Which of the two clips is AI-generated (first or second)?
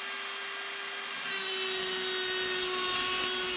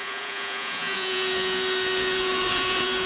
second